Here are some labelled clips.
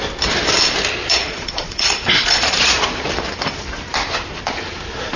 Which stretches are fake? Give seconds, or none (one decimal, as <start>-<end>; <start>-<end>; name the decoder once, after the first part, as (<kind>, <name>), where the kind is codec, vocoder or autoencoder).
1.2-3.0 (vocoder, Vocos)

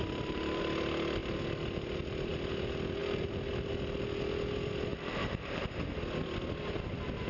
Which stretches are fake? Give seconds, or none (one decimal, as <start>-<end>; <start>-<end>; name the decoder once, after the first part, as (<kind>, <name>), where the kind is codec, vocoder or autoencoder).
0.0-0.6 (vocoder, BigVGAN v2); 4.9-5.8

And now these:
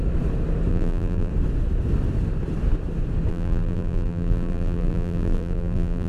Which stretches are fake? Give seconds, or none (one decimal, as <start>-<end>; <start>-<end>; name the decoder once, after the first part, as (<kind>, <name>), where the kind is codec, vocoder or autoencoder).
0.7-1.3 (vocoder, BigVGAN v2); 3.3-6.1

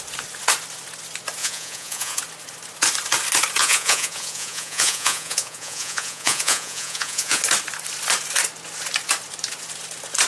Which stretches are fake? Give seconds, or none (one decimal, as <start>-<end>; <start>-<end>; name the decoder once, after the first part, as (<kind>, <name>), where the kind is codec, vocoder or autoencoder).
1.4-2.2 (vocoder, Vocos); 3.6-7.4

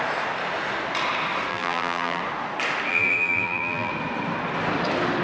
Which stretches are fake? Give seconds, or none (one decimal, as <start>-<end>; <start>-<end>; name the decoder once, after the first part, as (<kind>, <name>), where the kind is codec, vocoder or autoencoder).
1.5-2.2 (vocoder, BigVGAN v2); 2.9-3.9

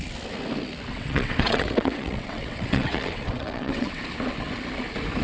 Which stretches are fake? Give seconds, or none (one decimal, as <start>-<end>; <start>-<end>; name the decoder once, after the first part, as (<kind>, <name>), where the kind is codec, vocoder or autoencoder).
0.9-4.0 (vocoder, WaveNeXt)

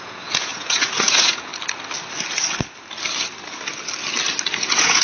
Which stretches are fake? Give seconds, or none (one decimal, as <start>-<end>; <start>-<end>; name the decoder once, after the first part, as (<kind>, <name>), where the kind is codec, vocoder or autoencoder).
0.0-1.5 (vocoder, Vocos); 4.5-5.0